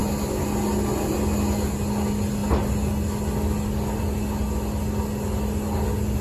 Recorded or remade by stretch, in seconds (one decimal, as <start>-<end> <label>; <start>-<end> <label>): 0.0-6.2 recorded